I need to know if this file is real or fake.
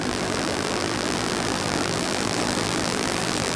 fake